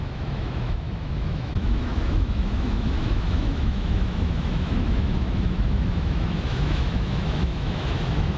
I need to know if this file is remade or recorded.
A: remade